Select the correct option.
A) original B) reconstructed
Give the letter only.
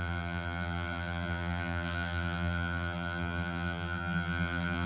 B